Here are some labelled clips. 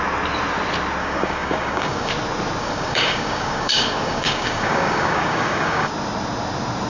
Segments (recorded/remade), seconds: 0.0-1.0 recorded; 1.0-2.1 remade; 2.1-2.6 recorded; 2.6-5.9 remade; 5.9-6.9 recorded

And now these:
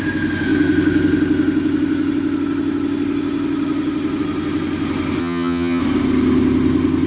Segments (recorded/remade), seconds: 0.0-5.2 recorded; 5.2-5.8 remade; 5.8-7.1 recorded

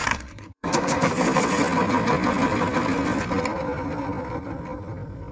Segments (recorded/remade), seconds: 0.0-1.1 remade; 1.1-5.3 recorded

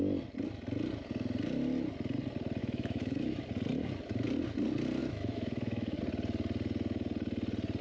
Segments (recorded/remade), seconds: 0.0-2.6 recorded; 2.6-3.5 remade; 3.5-5.0 recorded; 5.0-6.0 remade; 6.0-7.8 recorded

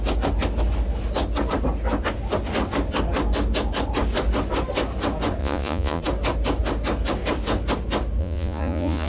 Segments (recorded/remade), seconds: 0.0-5.4 recorded; 5.4-6.0 remade; 6.0-8.2 recorded; 8.2-9.1 remade

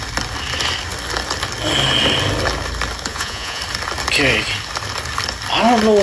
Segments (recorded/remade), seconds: 0.0-3.1 recorded; 3.1-3.6 remade; 3.6-6.0 recorded

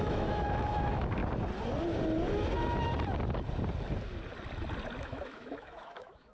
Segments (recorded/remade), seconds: 0.0-1.2 remade; 1.2-5.0 recorded; 5.0-6.3 remade